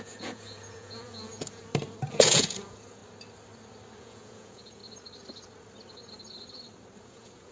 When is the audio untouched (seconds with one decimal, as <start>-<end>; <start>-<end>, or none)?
1.6-2.1; 3.0-4.0; 4.8-7.0